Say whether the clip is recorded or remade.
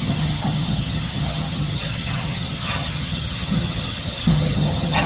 remade